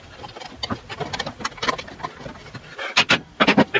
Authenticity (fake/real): real